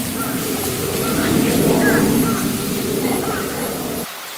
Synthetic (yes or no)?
no